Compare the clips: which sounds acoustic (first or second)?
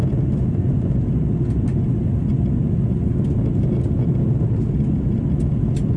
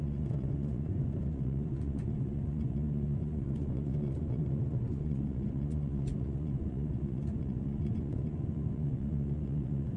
first